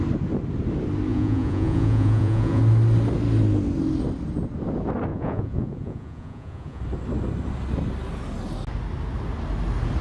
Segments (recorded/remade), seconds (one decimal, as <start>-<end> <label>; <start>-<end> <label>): 0.0-1.1 recorded; 1.1-2.6 remade; 2.6-5.1 recorded; 5.1-6.8 remade; 6.8-10.0 recorded